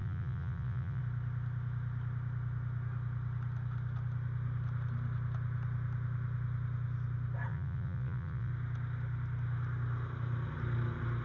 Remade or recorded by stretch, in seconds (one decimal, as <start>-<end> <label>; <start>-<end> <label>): 0.0-1.0 remade; 1.0-7.5 recorded; 7.5-8.5 remade; 8.5-11.2 recorded